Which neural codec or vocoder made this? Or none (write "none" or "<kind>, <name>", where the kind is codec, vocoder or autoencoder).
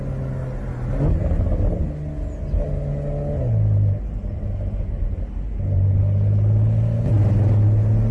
none